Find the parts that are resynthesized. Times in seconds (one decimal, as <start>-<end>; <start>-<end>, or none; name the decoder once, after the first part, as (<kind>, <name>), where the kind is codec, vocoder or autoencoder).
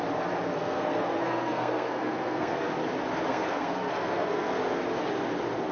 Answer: 0.6-2.6 (codec, SNAC); 3.3-4.6